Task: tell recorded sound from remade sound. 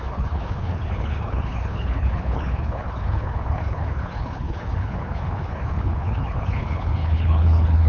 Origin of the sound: remade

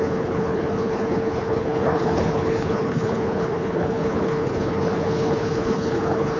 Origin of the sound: remade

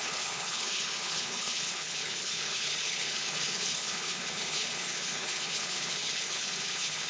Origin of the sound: remade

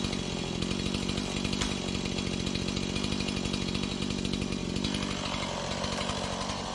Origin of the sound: recorded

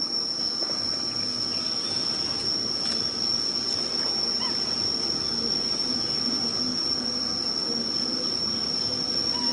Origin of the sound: recorded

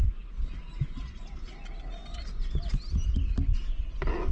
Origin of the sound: recorded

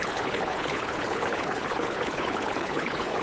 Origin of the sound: remade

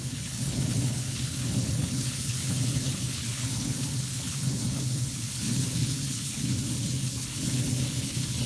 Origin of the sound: remade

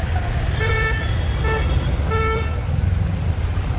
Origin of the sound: recorded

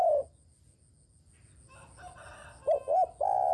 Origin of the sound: recorded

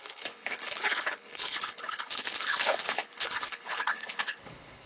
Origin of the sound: remade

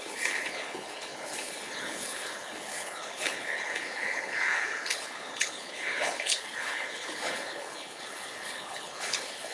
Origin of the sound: remade